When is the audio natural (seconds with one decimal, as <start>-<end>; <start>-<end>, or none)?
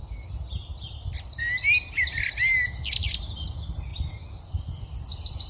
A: 0.0-5.5